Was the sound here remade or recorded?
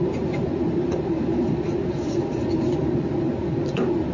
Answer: recorded